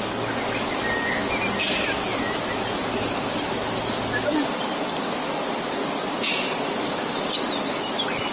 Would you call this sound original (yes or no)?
yes